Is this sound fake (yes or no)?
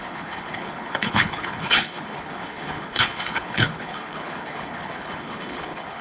yes